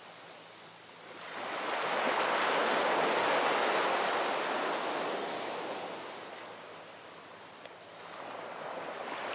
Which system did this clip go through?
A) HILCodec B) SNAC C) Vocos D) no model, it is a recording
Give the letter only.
D